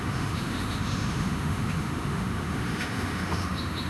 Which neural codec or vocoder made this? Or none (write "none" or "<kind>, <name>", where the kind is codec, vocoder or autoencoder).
autoencoder, DAC-VAE